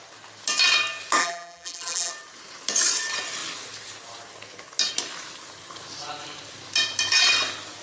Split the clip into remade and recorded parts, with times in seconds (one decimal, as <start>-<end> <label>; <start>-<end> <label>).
0.0-1.2 recorded; 1.2-2.1 remade; 2.1-7.8 recorded